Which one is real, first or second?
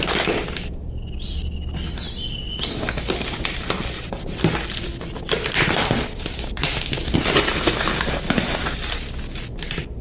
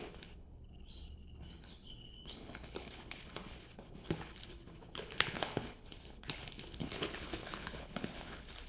first